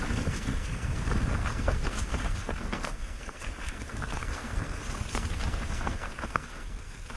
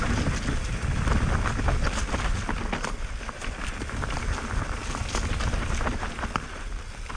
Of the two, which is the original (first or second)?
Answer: second